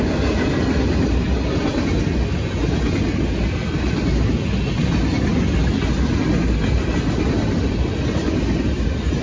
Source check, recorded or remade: recorded